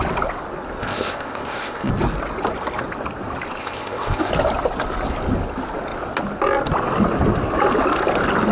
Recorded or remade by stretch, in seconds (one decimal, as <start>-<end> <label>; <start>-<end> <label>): 0.0-0.8 recorded; 0.8-1.9 remade; 1.9-3.6 recorded; 3.6-4.3 remade; 4.3-8.5 recorded